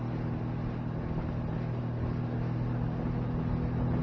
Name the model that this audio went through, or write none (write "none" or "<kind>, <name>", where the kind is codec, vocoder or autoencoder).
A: none